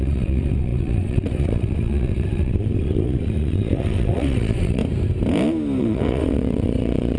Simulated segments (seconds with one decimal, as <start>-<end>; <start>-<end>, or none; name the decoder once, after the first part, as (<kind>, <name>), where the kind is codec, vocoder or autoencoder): 0.0-4.8 (vocoder, WaveNeXt); 5.8-7.2